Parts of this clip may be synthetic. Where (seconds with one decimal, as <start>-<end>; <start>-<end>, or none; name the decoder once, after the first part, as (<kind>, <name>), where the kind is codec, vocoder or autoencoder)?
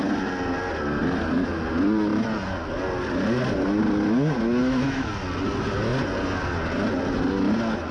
4.6-5.1 (autoencoder, DAC-VAE)